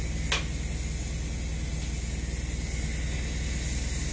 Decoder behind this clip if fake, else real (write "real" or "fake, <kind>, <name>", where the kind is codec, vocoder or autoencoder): real